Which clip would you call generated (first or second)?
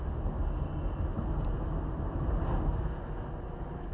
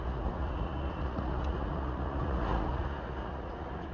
second